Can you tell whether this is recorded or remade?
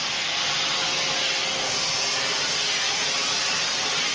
recorded